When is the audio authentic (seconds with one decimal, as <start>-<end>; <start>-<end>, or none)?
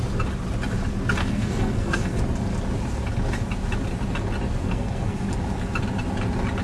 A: 0.0-1.2; 2.2-4.6; 5.3-6.6